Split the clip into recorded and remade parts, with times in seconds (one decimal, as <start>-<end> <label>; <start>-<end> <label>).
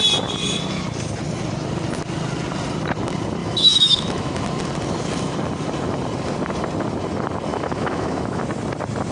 0.0-3.4 recorded; 3.4-4.4 remade; 4.4-7.5 recorded; 7.5-8.4 remade; 8.4-9.1 recorded